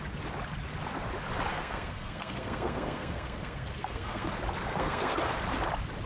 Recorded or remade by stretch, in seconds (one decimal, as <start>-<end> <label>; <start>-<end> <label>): 0.0-1.5 recorded; 1.5-4.3 remade; 4.3-4.7 recorded; 4.7-5.2 remade; 5.2-6.1 recorded